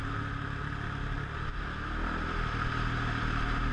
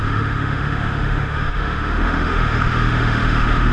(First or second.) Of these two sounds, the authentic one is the first